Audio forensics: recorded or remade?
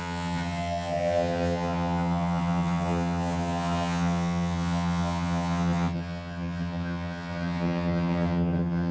remade